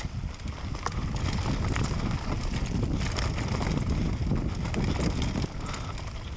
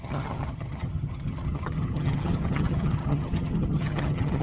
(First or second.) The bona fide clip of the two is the first